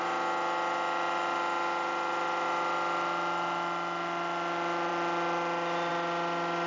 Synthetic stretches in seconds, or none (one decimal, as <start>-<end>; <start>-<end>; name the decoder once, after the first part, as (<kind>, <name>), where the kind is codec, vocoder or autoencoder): none